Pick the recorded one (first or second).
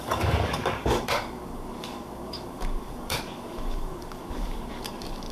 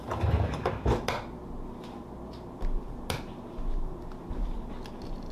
second